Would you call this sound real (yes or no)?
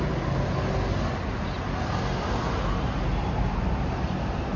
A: yes